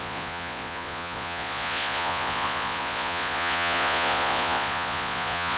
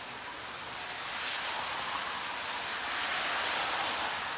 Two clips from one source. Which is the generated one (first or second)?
first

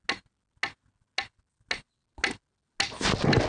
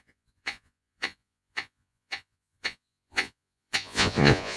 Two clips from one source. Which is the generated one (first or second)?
second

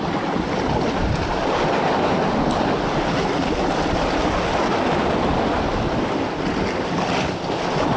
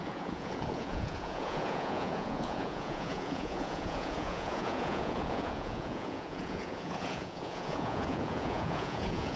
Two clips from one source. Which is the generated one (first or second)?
second